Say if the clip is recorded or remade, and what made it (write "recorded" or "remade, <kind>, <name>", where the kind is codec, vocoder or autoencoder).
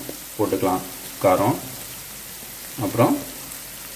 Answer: recorded